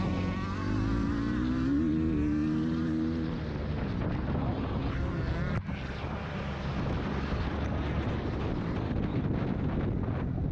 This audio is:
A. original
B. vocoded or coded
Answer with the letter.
A